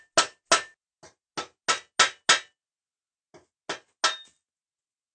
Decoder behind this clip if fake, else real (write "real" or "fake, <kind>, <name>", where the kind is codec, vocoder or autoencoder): real